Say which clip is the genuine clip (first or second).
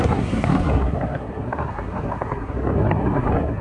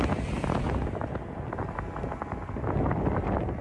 second